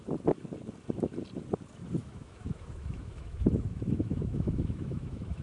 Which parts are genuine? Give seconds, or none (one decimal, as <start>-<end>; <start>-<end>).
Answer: 0.0-2.0